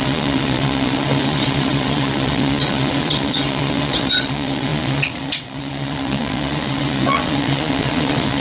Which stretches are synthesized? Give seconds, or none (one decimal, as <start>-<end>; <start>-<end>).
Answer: 0.0-8.4